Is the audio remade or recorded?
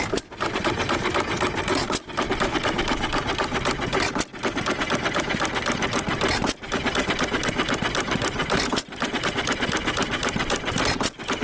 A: recorded